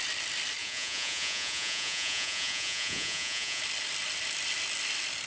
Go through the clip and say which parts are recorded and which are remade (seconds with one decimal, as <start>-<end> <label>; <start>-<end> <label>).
0.0-0.6 recorded; 0.6-3.6 remade; 3.6-5.3 recorded